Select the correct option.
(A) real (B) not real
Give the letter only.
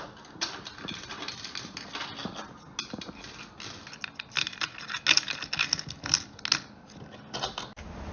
A